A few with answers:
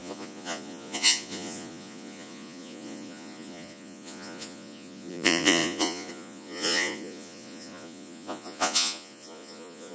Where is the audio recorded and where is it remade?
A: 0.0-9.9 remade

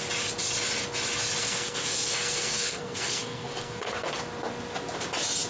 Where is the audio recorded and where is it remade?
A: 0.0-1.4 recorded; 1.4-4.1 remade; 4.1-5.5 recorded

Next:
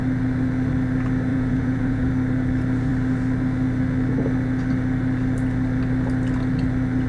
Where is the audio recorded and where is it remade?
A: 0.0-1.3 recorded; 1.3-2.1 remade; 2.1-7.1 recorded